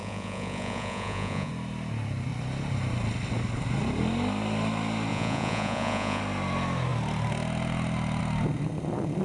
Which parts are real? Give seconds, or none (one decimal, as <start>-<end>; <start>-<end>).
1.5-5.1; 6.2-9.2